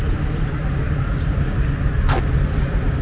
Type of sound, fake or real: real